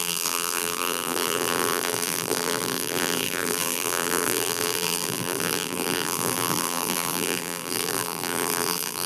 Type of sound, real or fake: fake